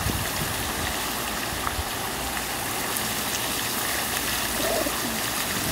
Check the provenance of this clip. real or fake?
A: real